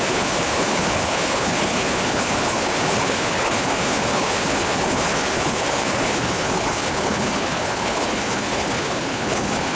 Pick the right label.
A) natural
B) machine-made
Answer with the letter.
B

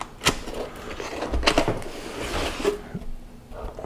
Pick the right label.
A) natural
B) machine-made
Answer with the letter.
A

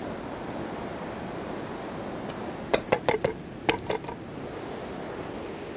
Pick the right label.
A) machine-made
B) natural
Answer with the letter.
B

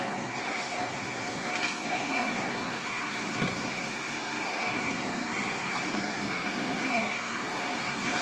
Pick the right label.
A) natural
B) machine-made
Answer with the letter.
B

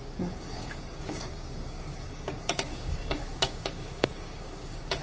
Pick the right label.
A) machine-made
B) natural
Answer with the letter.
A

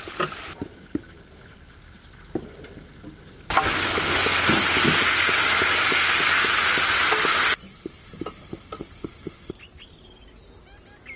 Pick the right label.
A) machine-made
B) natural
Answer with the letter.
B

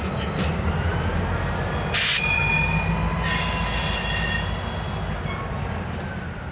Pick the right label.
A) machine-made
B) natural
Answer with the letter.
B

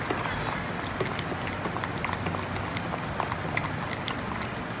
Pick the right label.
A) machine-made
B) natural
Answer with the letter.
B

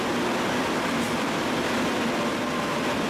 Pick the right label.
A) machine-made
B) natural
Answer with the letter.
A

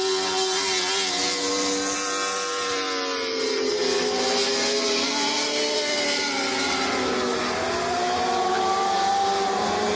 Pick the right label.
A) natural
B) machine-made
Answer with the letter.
A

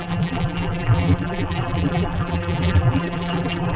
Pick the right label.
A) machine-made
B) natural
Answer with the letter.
A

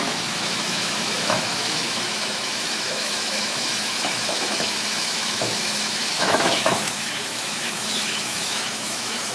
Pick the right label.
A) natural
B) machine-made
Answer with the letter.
B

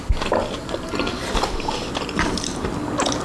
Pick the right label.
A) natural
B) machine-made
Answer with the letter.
A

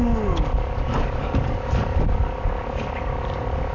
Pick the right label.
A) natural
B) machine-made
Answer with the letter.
B